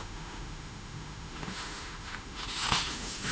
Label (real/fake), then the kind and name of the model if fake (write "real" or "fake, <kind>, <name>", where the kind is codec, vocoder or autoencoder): fake, autoencoder, DAC-VAE